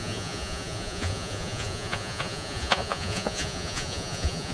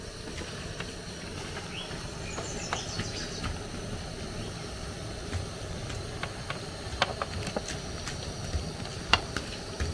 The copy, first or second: first